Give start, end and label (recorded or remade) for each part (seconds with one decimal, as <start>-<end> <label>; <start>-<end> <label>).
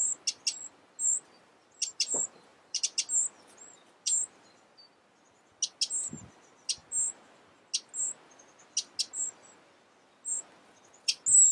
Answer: 0.0-1.6 recorded; 1.6-2.8 remade; 2.8-11.5 recorded